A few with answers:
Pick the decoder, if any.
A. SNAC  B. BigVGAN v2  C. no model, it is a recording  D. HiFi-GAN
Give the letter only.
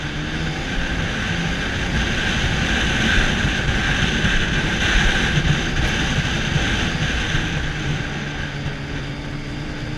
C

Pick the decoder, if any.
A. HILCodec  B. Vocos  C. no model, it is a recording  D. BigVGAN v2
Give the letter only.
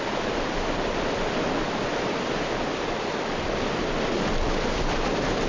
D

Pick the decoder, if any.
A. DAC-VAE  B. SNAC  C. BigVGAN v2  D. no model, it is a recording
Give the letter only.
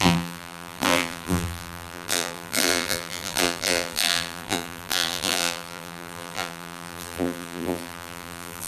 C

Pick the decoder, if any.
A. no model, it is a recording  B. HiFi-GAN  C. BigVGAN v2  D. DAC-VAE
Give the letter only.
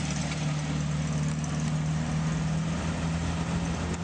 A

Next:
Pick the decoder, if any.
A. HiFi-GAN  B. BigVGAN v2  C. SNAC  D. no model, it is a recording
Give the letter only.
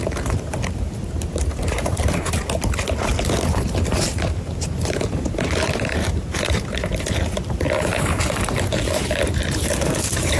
B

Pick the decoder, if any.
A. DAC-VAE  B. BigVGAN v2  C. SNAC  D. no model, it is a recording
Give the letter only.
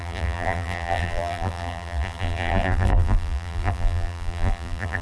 B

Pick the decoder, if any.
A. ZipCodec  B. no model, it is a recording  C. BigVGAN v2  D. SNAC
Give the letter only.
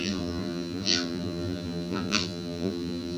C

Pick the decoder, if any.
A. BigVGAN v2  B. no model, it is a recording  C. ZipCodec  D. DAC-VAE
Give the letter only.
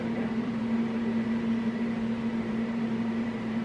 A